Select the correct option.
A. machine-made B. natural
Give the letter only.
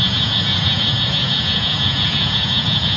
A